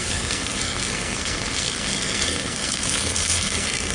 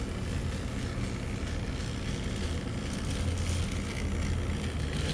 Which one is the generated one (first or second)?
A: first